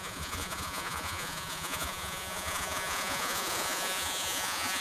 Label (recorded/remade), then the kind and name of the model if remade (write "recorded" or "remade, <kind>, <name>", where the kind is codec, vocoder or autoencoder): remade, vocoder, Vocos